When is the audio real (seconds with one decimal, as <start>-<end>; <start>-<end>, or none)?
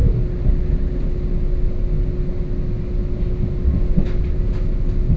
0.0-5.2